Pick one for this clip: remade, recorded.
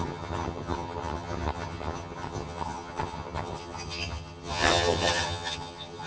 remade